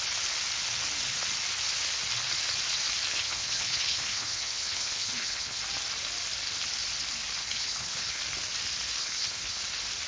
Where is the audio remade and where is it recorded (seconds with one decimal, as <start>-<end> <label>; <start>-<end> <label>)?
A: 0.0-3.1 recorded; 3.1-5.6 remade; 5.6-7.4 recorded; 7.4-8.2 remade; 8.2-9.0 recorded; 9.0-9.6 remade; 9.6-10.1 recorded

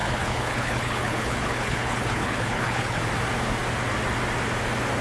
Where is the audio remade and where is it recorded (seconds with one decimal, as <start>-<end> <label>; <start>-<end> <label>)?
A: 0.0-3.0 remade; 3.0-5.0 recorded

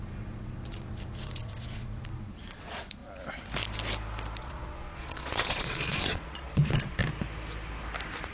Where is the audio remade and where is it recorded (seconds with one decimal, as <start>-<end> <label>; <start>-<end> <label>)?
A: 0.0-3.0 remade; 3.0-4.4 recorded; 4.4-7.0 remade; 7.0-8.3 recorded

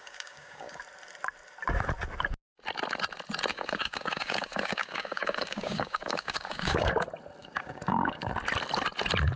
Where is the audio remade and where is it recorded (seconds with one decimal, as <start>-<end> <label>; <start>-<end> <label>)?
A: 0.0-0.8 remade; 0.8-3.5 recorded; 3.5-6.9 remade; 6.9-7.4 recorded; 7.4-8.3 remade; 8.3-9.4 recorded

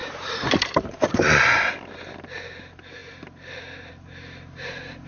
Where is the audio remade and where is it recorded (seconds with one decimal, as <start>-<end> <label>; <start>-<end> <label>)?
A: 0.0-1.7 remade; 1.7-5.1 recorded